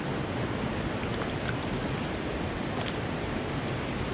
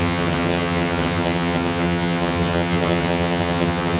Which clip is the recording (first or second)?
first